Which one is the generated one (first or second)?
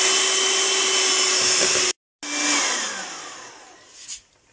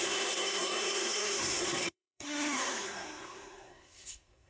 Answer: second